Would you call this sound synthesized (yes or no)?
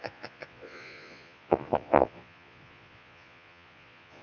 yes